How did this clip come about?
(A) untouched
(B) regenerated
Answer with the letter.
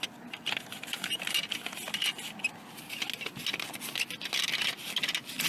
A